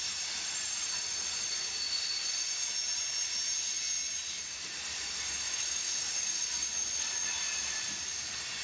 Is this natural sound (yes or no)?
yes